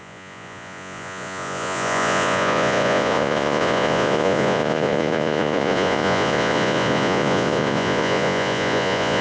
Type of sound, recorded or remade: remade